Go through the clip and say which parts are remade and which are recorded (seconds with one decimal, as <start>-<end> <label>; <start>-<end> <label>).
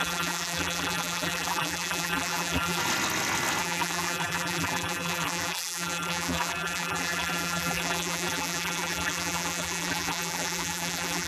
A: 0.0-2.8 remade; 2.8-3.6 recorded; 3.6-11.3 remade